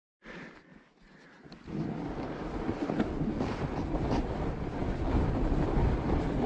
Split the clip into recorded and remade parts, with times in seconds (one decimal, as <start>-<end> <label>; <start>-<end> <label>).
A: 0.0-6.5 recorded